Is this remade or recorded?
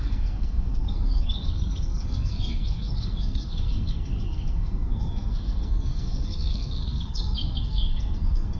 remade